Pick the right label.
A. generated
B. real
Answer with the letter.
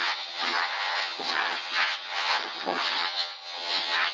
A